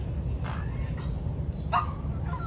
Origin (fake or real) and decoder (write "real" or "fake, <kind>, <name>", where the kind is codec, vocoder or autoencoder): real